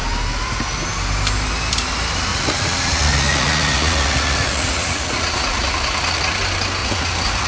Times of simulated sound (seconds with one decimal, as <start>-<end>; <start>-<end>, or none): 2.3-6.3; 6.8-7.5